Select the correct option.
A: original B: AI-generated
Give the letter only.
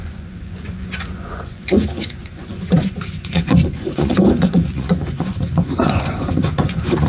B